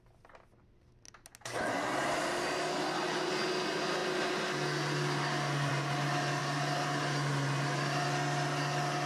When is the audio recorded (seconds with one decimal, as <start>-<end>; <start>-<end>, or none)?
0.0-9.1